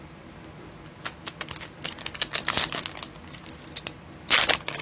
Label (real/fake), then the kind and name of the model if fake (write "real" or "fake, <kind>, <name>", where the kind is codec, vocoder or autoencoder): real